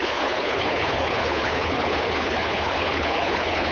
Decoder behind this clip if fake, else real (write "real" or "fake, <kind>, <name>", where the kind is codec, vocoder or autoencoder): fake, codec, HILCodec